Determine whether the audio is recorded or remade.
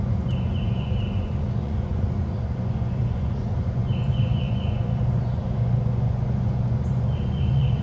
remade